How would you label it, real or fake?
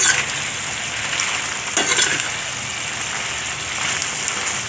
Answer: real